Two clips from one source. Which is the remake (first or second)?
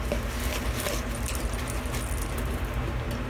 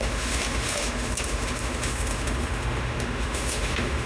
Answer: second